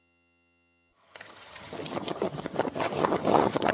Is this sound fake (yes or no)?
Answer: yes